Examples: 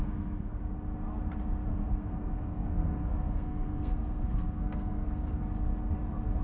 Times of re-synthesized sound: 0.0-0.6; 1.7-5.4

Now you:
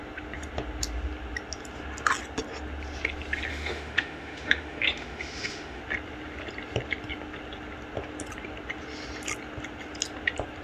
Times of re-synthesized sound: 3.5-5.8